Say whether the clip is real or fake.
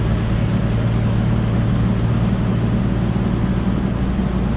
real